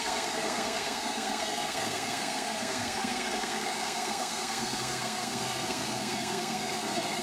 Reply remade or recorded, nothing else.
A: remade